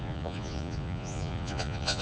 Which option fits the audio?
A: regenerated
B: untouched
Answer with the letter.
A